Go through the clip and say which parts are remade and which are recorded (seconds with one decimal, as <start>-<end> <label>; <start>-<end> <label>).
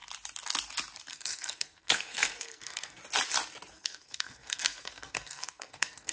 0.0-1.1 recorded; 1.1-3.0 remade; 3.0-3.7 recorded; 3.7-6.1 remade